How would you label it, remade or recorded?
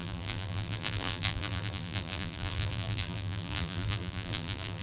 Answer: remade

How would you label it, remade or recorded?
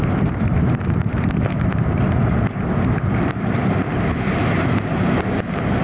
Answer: remade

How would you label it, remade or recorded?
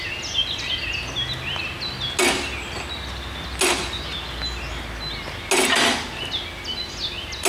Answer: recorded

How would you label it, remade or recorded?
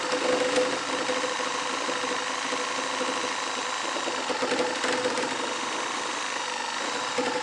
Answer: recorded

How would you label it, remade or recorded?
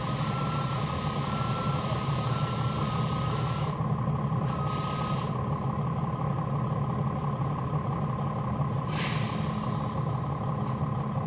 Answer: recorded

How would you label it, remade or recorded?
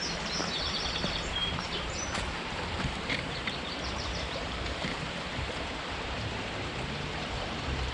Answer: remade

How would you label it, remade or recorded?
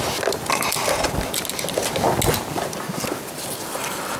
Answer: recorded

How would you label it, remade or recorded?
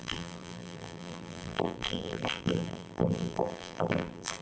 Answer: remade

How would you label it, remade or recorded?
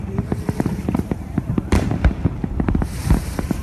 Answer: remade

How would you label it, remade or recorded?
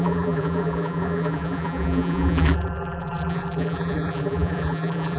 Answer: remade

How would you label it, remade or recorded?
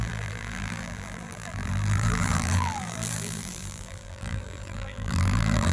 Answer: remade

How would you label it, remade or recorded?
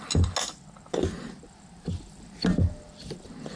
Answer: recorded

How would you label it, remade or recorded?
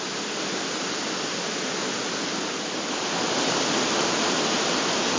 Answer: recorded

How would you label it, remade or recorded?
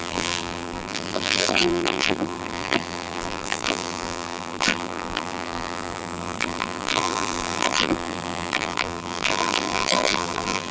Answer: remade